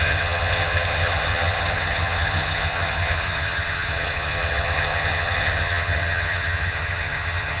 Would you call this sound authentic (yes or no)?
no